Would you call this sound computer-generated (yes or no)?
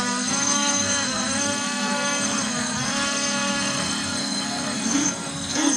yes